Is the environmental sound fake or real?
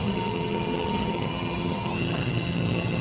fake